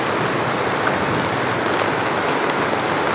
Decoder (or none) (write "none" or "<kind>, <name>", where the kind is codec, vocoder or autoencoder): none